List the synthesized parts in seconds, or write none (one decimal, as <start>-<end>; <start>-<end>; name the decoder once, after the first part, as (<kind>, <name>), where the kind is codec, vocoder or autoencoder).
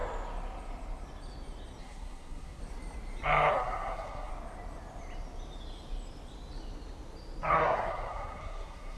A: 1.8-2.6 (codec, SNAC); 3.5-4.3; 7.5-9.0